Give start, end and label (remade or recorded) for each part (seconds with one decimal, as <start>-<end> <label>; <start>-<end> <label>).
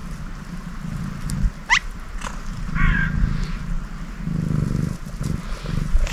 0.0-1.8 recorded; 1.8-3.2 remade; 3.2-6.1 recorded